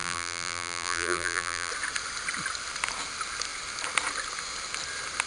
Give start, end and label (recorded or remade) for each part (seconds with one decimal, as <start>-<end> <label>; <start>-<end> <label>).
0.0-1.7 remade; 1.7-5.3 recorded